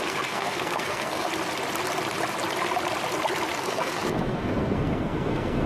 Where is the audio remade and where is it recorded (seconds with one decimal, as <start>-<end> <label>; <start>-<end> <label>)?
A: 0.0-1.3 remade; 1.3-3.6 recorded; 3.6-5.7 remade

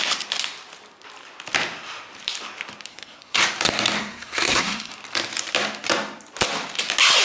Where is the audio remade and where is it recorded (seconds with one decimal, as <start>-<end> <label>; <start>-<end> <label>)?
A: 0.0-2.9 recorded; 2.9-3.4 remade; 3.4-4.0 recorded; 4.0-4.9 remade; 4.9-7.2 recorded